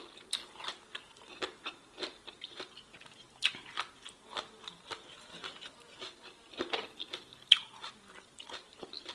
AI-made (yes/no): no